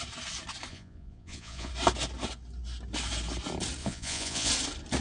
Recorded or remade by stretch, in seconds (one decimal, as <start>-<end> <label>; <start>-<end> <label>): 0.0-0.7 recorded; 0.7-1.7 remade; 1.7-3.8 recorded; 3.8-4.5 remade; 4.5-5.0 recorded